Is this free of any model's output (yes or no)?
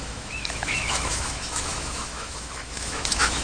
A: no